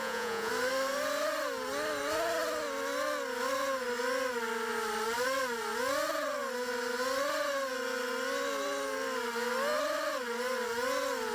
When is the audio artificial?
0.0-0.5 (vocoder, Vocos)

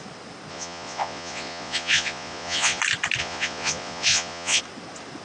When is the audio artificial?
0.5-2.8 (vocoder, Vocos); 3.2-4.6

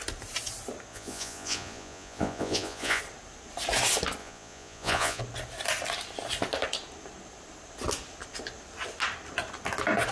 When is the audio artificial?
0.9-3.0 (vocoder, Vocos); 4.2-5.2

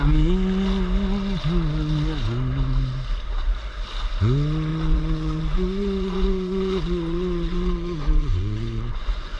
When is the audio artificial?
4.7-9.4 (vocoder, Vocos)

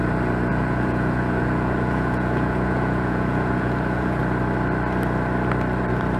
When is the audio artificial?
0.5-4.2 (vocoder, Vocos)

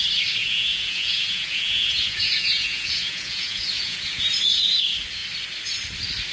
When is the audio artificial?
0.4-4.2 (vocoder, Vocos)

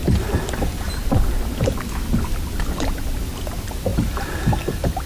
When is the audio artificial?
none